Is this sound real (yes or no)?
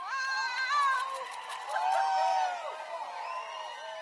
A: yes